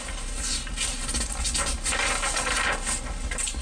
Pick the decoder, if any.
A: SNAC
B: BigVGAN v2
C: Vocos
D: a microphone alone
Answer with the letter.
D